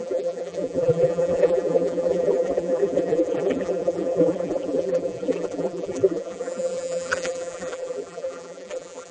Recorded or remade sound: remade